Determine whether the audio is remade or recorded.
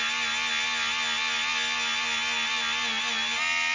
recorded